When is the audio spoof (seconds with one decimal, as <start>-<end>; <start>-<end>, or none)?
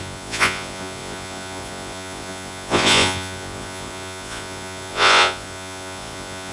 0.0-6.5